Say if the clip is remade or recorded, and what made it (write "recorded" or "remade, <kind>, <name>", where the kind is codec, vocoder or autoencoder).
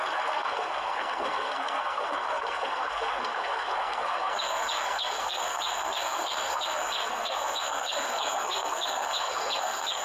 remade, codec, SNAC